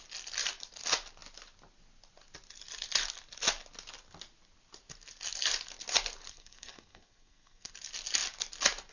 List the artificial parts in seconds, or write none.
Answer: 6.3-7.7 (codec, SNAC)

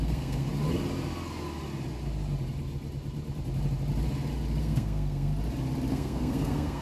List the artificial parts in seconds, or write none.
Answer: 0.0-0.5 (codec, SNAC); 4.6-5.3; 5.9-6.8

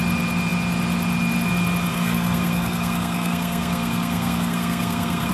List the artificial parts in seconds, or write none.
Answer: 1.9-5.3 (codec, SNAC)

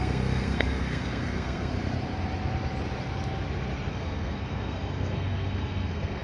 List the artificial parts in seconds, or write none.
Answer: 0.0-1.7 (codec, SNAC); 3.9-6.2